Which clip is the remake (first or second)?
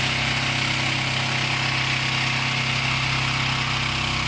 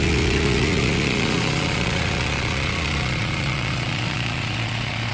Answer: second